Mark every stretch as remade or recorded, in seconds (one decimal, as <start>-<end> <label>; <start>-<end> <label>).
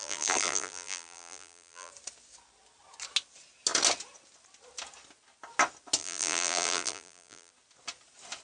0.0-1.9 remade; 1.9-6.0 recorded; 6.0-7.5 remade; 7.5-8.4 recorded